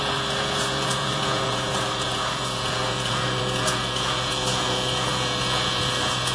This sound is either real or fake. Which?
fake